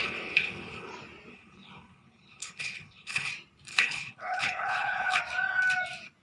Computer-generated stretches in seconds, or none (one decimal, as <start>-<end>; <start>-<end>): 0.0-0.9; 1.3-3.3; 3.7-5.2